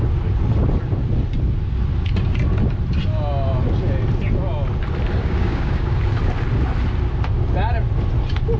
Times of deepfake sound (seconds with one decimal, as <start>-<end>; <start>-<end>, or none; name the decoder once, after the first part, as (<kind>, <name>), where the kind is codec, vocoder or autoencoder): 5.2-6.0 (codec, DAC)